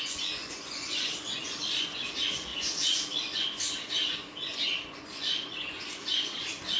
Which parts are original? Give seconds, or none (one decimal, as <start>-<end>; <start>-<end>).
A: none